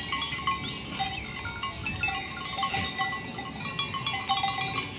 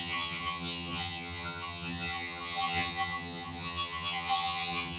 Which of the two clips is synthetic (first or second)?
second